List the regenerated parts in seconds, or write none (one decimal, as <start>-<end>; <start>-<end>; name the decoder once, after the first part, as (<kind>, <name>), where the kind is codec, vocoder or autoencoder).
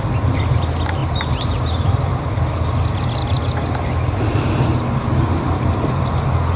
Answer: none